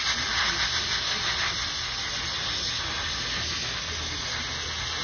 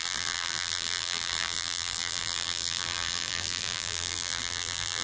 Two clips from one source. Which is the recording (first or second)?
first